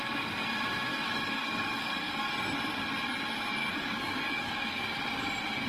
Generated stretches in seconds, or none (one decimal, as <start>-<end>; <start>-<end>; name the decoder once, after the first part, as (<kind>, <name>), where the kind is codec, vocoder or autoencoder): 0.9-2.3 (codec, DAC); 3.6-4.8

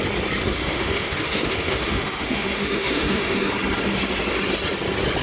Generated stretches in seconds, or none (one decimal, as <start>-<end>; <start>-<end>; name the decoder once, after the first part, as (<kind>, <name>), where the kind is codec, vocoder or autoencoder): 0.4-3.5 (autoencoder, DAC-VAE)

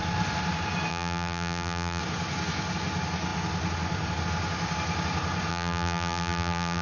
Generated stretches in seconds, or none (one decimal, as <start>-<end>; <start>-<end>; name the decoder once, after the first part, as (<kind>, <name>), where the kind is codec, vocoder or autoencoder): 0.9-2.0 (vocoder, BigVGAN v2); 5.5-6.8

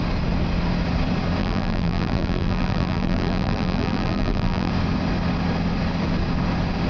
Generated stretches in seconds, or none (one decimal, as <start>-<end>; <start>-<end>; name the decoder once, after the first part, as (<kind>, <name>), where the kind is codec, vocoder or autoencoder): 1.4-4.7 (vocoder, BigVGAN v2)

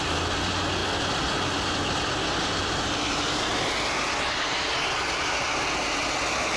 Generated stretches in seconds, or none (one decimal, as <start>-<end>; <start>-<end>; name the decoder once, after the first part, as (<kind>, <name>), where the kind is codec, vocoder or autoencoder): none

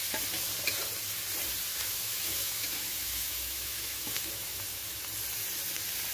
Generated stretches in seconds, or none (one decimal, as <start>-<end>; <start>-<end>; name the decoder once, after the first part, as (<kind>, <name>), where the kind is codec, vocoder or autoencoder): 1.7-5.0 (autoencoder, DAC-VAE)

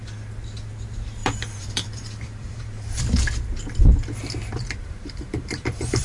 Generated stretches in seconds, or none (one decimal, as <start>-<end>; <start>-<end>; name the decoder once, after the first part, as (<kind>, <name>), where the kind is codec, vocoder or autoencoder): 1.2-3.0 (vocoder, BigVGAN v2); 4.8-6.0